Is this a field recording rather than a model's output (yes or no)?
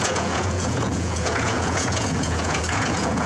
no